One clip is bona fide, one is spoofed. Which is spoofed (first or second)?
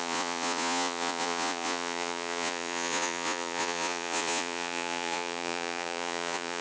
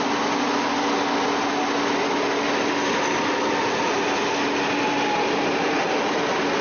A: first